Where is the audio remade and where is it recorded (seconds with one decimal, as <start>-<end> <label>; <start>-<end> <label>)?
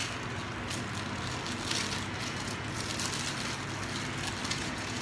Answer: 0.0-2.2 recorded; 2.2-2.9 remade; 2.9-4.5 recorded; 4.5-5.0 remade